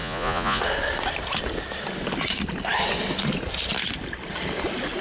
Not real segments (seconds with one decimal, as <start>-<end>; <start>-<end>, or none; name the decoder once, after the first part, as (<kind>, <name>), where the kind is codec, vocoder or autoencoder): 0.0-0.6 (vocoder, Vocos)